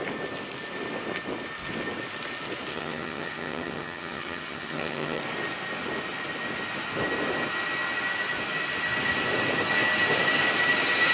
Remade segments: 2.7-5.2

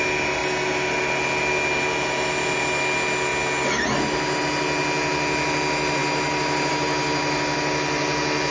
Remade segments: none

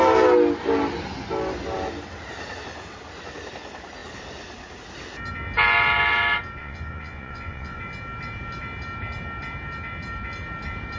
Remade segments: 6.6-7.8

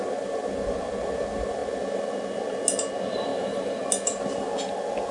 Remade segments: 3.3-3.9

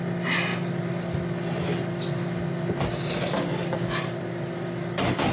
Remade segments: none

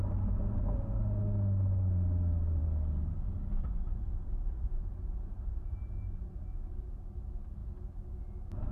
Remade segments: none